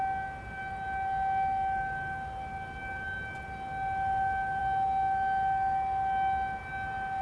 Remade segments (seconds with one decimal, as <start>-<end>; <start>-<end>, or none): none